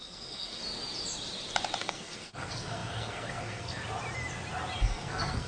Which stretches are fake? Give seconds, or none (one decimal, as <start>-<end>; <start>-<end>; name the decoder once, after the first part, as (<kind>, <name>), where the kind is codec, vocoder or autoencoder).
0.0-0.6 (codec, SNAC); 1.8-3.8; 4.8-5.5